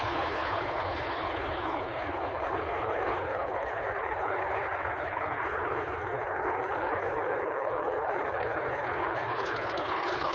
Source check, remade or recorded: remade